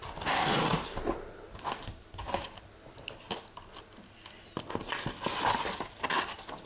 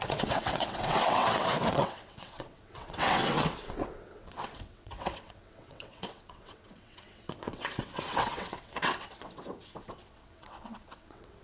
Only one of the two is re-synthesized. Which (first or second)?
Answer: second